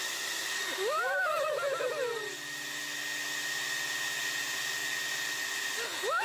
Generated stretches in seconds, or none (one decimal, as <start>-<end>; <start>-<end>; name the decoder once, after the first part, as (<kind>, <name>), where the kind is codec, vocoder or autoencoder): 0.0-3.0 (vocoder, BigVGAN v2); 4.8-5.5